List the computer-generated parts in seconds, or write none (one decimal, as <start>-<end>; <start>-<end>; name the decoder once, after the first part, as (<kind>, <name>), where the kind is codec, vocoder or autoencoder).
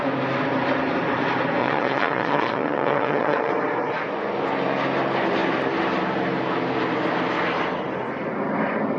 1.6-3.5 (vocoder, Vocos)